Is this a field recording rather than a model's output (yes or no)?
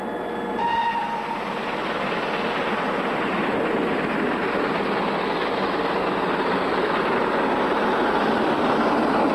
yes